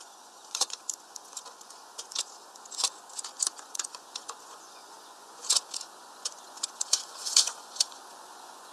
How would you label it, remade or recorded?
remade